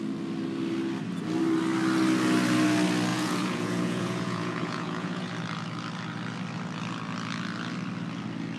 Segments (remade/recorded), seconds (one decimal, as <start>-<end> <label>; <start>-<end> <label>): 0.0-3.1 recorded; 3.1-5.3 remade; 5.3-8.6 recorded